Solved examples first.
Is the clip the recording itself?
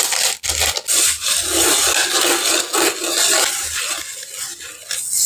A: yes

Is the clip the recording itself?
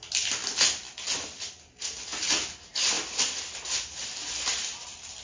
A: yes